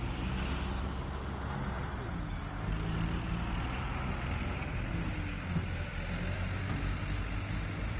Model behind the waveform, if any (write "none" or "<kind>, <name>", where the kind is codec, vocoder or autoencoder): none